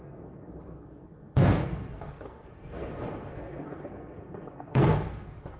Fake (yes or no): yes